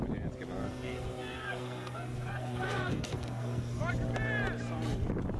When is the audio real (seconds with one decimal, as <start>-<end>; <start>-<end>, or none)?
0.0-0.6; 3.8-5.4